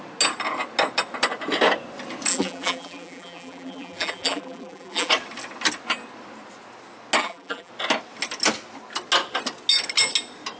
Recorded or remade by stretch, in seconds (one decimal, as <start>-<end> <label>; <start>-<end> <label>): 0.0-2.3 recorded; 2.3-5.1 remade; 5.1-7.2 recorded; 7.2-7.7 remade; 7.7-10.6 recorded